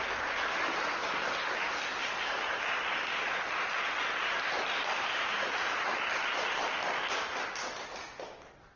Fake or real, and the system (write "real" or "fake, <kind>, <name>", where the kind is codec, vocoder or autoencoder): real